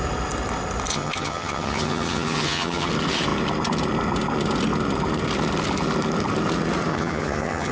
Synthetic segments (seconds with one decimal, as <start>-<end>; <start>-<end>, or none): 0.9-2.9; 6.9-7.7